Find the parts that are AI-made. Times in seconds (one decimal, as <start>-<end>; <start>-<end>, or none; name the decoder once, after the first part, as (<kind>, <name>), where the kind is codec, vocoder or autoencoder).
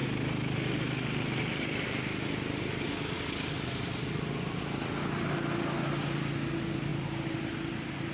0.0-4.2 (vocoder, BigVGAN v2)